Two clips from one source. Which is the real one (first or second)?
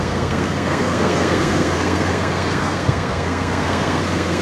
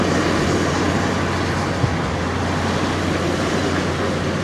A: second